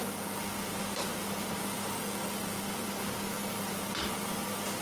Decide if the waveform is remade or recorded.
recorded